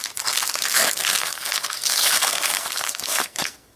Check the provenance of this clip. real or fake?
fake